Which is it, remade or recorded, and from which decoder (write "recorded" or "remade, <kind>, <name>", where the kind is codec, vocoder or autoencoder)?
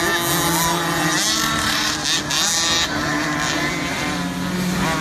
recorded